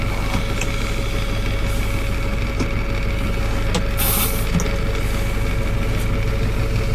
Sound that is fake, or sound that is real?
real